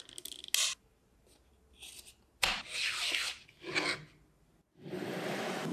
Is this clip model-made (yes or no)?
no